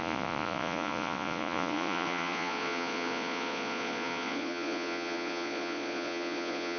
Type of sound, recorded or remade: remade